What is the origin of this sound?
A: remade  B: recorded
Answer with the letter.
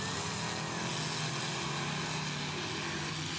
B